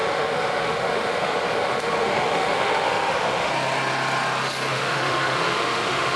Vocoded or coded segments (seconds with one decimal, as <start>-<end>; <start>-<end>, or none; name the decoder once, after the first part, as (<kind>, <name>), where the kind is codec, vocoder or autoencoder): 0.0-3.5 (autoencoder, DAC-VAE); 4.7-6.2